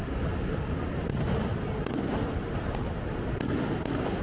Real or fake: real